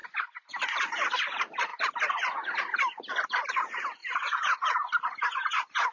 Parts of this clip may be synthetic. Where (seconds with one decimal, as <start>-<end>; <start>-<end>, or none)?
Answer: 4.0-4.7